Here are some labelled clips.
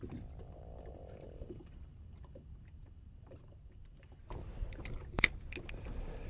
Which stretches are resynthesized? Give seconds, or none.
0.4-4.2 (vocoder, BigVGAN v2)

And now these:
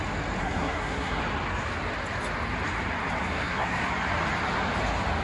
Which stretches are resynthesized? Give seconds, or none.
0.4-1.2 (codec, SNAC); 3.2-3.8